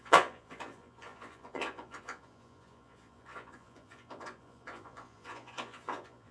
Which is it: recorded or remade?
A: remade